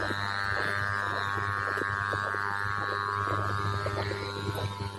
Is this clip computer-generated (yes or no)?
no